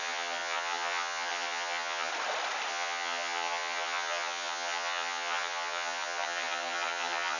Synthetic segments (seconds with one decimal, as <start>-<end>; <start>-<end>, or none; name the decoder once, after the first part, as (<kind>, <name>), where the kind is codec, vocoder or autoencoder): 0.0-2.1 (vocoder, HiFi-GAN); 2.7-7.4